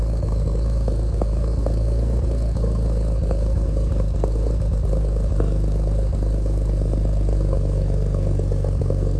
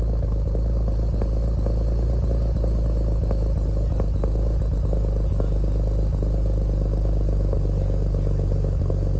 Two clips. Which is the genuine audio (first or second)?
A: second